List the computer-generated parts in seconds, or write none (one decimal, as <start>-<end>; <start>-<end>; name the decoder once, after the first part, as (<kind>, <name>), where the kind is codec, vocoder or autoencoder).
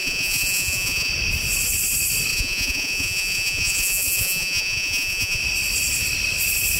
0.0-1.1 (vocoder, Vocos); 2.3-5.4